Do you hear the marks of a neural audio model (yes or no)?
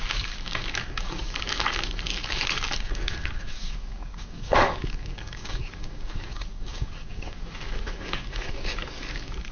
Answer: yes